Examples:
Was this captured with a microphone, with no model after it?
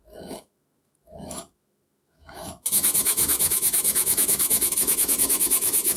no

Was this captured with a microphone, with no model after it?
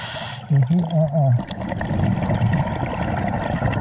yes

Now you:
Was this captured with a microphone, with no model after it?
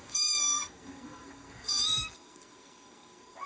no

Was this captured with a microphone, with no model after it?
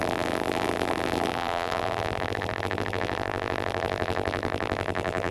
no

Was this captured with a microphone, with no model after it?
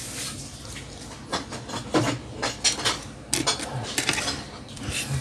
yes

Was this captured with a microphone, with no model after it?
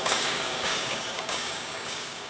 no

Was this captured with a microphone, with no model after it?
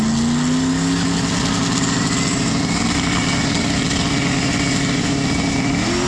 yes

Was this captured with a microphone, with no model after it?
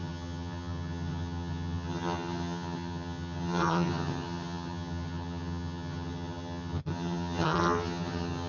no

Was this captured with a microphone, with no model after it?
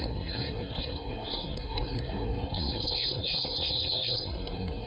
no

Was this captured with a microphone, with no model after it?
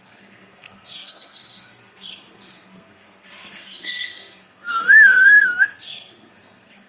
no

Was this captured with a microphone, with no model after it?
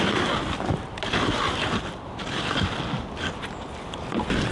yes